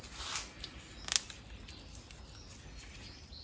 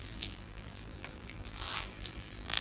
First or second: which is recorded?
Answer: first